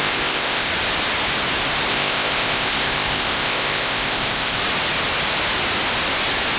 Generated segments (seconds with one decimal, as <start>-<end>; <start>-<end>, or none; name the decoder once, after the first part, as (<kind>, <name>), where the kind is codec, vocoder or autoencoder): 0.0-0.7 (codec, ZipCodec); 1.9-4.6